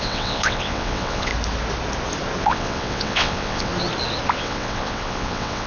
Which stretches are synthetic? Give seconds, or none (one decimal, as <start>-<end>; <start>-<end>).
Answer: 0.0-1.3; 2.4-3.7; 4.3-5.7